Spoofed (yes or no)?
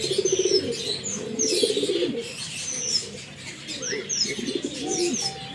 no